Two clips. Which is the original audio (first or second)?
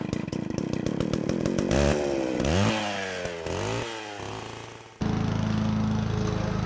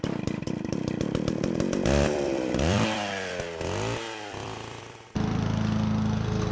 first